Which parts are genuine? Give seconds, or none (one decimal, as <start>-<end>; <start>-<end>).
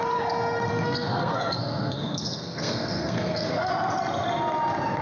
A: 0.0-0.7; 3.7-5.0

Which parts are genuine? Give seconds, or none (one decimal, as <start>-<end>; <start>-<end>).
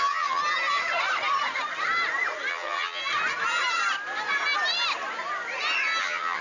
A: 0.4-2.5; 3.0-6.0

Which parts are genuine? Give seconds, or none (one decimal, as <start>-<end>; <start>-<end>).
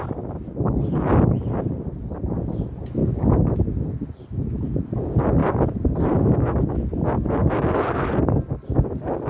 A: 0.0-5.4; 6.3-7.4; 8.1-9.3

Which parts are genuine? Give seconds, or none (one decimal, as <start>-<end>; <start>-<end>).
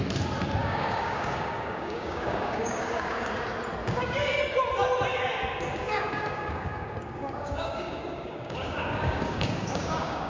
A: 0.0-0.6; 3.3-3.8; 4.4-5.1